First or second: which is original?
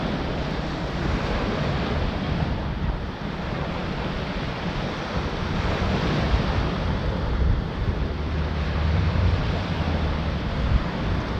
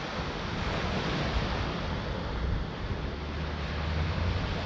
second